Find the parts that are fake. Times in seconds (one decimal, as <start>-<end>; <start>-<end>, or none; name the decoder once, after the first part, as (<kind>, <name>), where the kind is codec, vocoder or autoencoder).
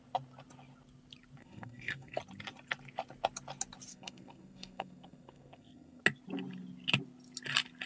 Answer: 1.4-2.2 (codec, SNAC); 3.9-6.0